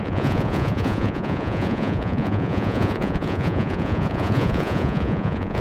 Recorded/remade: remade